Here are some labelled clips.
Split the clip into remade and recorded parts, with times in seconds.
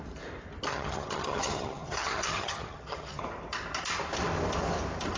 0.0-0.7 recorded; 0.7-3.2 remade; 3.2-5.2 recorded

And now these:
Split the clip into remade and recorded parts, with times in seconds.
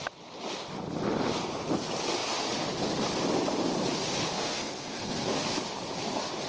0.0-4.3 recorded; 4.3-5.5 remade; 5.5-6.5 recorded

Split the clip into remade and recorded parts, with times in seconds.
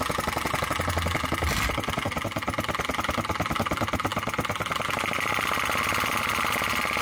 0.0-7.0 recorded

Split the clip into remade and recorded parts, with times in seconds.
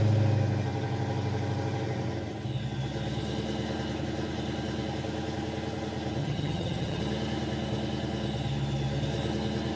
0.0-6.2 recorded; 6.2-7.0 remade; 7.0-9.8 recorded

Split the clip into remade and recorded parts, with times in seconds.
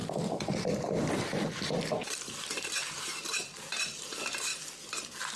0.0-4.5 remade; 4.5-5.4 recorded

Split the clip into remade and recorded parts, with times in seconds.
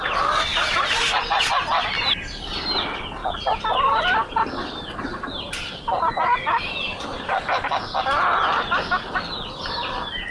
0.0-10.3 recorded